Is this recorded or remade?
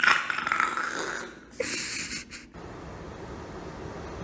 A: recorded